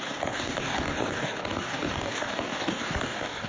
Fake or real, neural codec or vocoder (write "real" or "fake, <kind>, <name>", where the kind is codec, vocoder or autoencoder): fake, codec, DAC